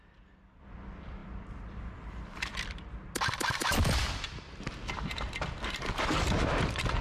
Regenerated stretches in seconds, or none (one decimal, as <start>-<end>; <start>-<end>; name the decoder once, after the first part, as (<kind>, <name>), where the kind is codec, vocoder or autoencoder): 1.2-2.9 (vocoder, BigVGAN v2); 3.6-7.0